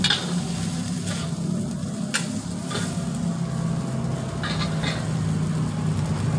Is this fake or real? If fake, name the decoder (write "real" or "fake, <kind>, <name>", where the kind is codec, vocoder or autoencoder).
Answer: real